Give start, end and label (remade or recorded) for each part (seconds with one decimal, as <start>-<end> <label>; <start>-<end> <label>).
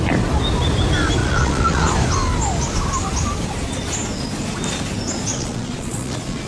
0.0-1.2 recorded; 1.2-1.9 remade; 1.9-5.3 recorded; 5.3-6.5 remade